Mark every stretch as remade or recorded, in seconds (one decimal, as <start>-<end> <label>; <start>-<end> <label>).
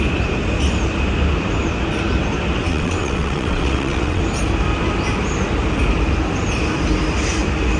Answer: 0.0-2.7 recorded; 2.7-4.2 remade; 4.2-7.8 recorded